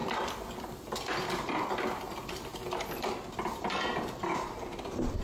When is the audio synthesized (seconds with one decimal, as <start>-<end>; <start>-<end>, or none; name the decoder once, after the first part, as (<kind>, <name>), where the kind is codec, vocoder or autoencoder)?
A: 0.6-2.5 (vocoder, BigVGAN v2); 3.6-5.2